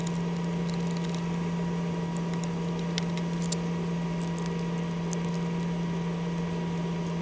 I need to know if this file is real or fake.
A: real